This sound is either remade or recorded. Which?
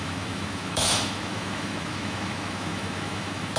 remade